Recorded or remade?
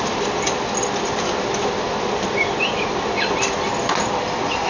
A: recorded